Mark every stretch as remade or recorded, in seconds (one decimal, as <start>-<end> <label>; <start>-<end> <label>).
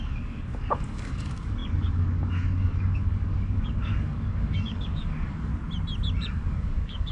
0.0-5.5 remade; 5.5-6.3 recorded; 6.3-7.1 remade